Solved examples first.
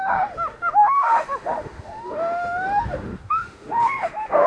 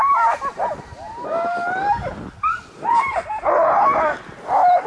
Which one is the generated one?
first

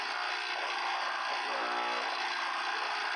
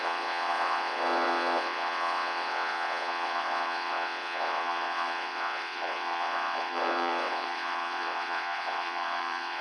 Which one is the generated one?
second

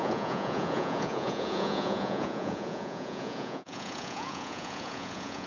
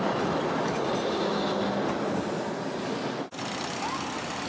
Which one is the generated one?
first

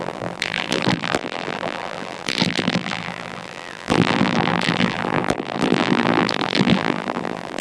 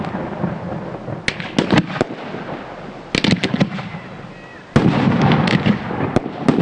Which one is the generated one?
first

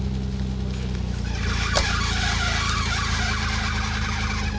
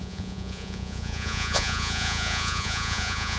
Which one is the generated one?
second